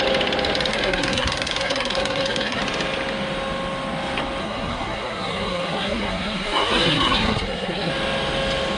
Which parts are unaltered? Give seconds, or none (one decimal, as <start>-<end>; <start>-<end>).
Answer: 0.0-0.7; 2.6-4.4; 7.9-8.8